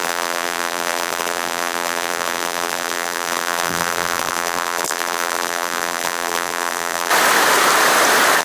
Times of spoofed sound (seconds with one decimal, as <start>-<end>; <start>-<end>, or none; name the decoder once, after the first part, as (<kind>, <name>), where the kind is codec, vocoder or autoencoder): 0.0-7.1 (vocoder, BigVGAN v2)